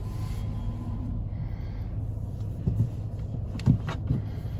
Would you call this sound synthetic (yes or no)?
no